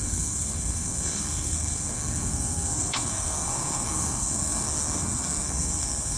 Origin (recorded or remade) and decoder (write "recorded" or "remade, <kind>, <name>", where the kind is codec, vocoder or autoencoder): remade, codec, SNAC